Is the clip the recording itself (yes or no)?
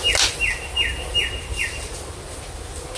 yes